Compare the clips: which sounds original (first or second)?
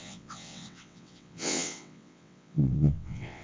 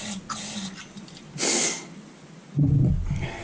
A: second